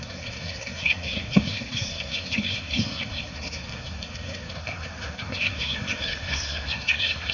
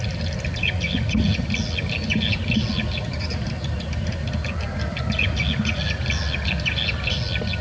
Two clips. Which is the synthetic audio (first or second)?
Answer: first